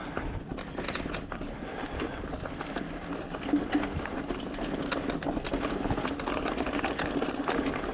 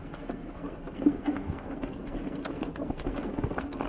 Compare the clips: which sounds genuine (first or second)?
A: first